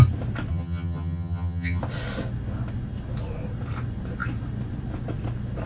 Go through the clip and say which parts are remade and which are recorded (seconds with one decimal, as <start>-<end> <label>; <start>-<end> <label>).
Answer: 0.0-0.5 recorded; 0.5-1.8 remade; 1.8-5.7 recorded